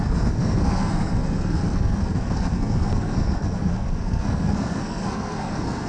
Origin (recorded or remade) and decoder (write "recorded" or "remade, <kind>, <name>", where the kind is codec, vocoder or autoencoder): remade, codec, SNAC